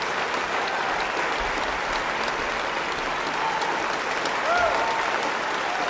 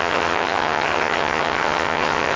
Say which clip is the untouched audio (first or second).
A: first